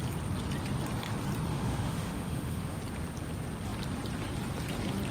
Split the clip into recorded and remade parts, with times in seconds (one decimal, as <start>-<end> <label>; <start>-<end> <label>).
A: 0.0-1.5 recorded; 1.5-2.8 remade; 2.8-5.1 recorded